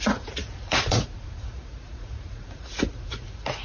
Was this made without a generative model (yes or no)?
no